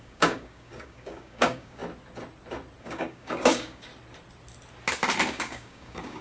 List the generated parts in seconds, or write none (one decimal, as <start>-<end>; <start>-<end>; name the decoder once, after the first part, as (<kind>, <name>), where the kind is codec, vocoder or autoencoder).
0.0-1.8 (codec, DAC); 2.8-3.9; 5.3-6.2